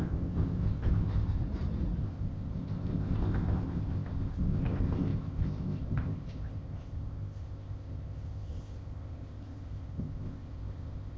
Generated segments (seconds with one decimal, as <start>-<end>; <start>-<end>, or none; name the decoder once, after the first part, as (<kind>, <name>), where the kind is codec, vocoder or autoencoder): 0.0-1.4 (codec, ZipCodec); 2.0-11.2